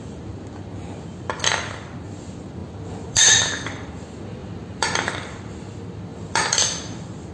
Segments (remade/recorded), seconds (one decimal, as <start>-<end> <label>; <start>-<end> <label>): 0.0-2.6 recorded; 2.6-3.9 remade; 3.9-4.4 recorded; 4.4-5.5 remade; 5.5-6.1 recorded; 6.1-7.3 remade